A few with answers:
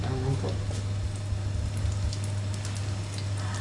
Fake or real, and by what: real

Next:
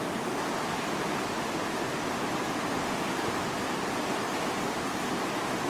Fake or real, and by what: real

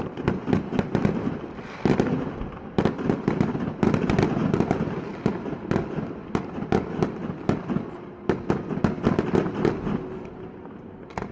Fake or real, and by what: real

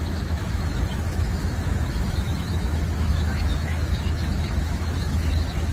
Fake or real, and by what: fake, autoencoder, DAC-VAE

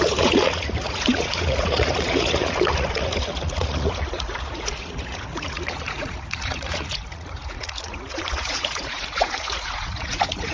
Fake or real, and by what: fake, vocoder, Vocos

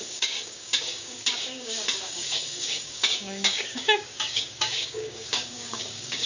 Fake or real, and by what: fake, codec, DAC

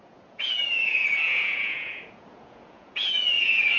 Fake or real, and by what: fake, vocoder, Vocos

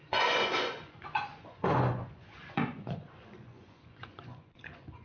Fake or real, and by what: fake, vocoder, Vocos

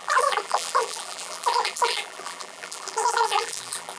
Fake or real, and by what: fake, vocoder, BigVGAN v2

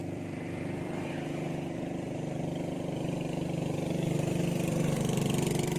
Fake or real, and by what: fake, vocoder, BigVGAN v2